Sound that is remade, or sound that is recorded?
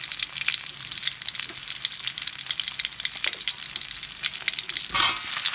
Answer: recorded